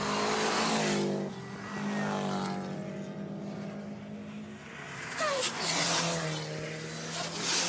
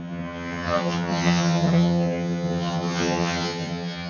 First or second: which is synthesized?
second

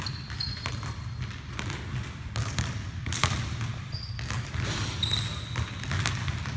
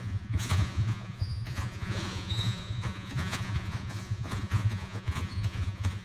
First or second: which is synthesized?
second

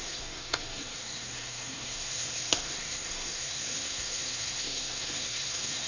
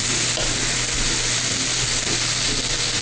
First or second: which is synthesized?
first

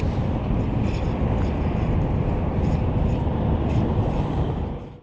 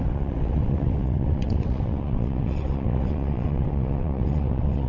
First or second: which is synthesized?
second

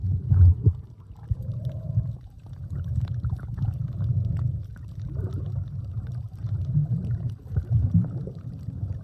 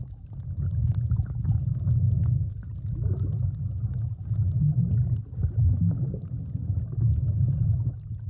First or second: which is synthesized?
first